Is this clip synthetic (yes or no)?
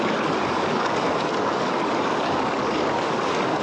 yes